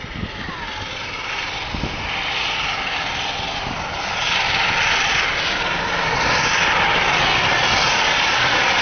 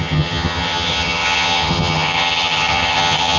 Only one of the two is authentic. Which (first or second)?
first